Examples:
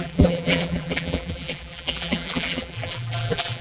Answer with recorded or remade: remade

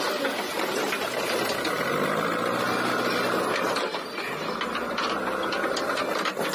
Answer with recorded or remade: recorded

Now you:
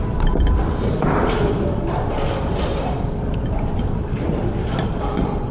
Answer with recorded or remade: remade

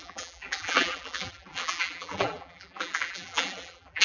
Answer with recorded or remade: remade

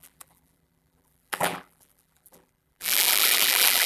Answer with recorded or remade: remade